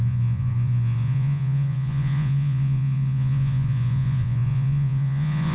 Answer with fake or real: fake